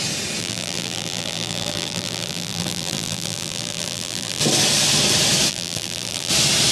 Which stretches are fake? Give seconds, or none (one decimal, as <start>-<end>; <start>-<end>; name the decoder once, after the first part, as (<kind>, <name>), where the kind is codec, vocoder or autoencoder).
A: 0.4-4.4 (vocoder, BigVGAN v2); 5.5-6.3

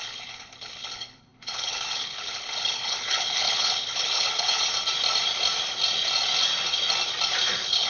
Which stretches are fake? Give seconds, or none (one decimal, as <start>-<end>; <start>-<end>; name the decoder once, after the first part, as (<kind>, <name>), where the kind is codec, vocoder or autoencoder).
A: 0.0-4.7 (codec, HILCodec); 7.5-7.9

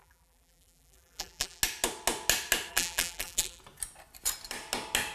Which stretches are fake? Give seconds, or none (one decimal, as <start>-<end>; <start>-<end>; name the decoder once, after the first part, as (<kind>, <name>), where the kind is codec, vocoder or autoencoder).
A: 0.0-1.6 (vocoder, BigVGAN v2); 2.7-3.6

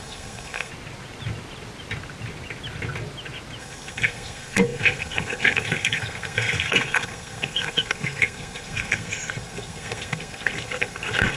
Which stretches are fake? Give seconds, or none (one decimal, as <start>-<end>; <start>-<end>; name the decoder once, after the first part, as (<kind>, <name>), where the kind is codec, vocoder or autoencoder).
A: 0.0-0.7 (codec, SNAC); 3.6-11.4

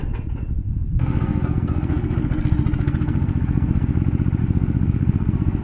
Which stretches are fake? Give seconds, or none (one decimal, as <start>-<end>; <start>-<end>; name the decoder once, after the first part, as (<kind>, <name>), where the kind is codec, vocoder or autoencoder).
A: 0.6-4.0 (codec, SNAC); 4.4-5.6